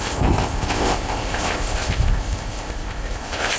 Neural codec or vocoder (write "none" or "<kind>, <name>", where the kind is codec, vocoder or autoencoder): codec, ZipCodec